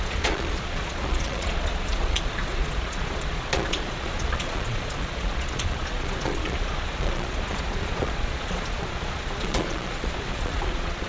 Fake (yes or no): yes